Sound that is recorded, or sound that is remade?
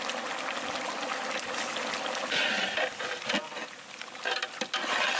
recorded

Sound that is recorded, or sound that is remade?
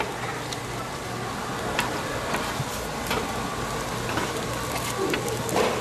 recorded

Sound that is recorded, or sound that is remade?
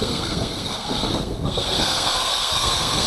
remade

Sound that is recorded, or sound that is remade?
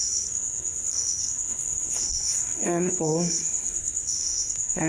remade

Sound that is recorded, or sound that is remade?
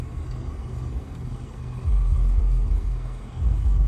remade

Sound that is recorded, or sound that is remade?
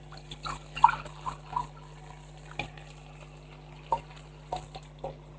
recorded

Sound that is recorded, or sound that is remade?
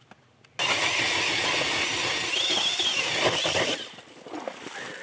recorded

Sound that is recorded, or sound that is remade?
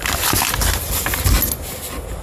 recorded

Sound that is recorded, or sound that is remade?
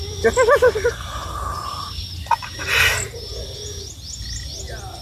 recorded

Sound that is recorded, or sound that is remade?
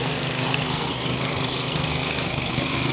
remade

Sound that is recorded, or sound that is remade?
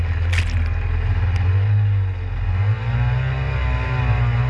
recorded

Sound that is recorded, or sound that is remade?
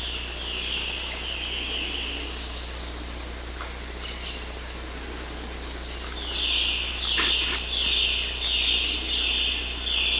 recorded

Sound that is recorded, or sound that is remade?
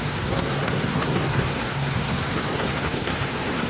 remade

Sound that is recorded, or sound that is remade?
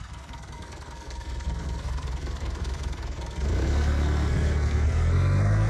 remade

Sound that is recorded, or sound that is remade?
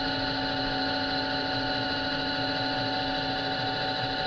recorded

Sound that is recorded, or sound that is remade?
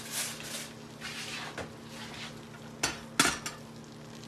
recorded